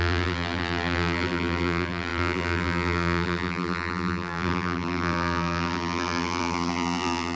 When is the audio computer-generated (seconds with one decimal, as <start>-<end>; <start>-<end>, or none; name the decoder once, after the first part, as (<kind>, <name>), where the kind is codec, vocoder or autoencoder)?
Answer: 0.0-7.3 (vocoder, BigVGAN v2)